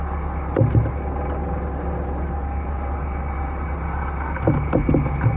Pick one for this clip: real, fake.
real